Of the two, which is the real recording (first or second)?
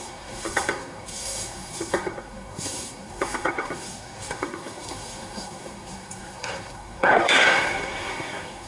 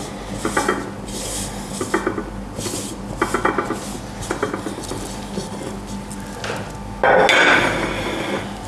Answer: second